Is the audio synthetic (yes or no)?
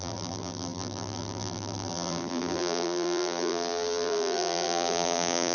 yes